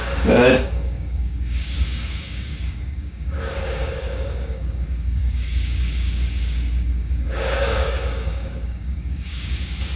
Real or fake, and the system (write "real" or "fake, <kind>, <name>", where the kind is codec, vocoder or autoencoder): fake, codec, DAC